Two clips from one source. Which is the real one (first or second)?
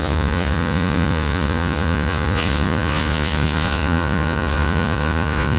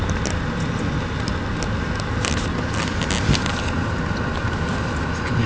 second